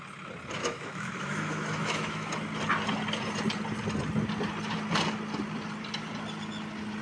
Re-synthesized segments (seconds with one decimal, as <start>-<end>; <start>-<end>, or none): 0.6-2.3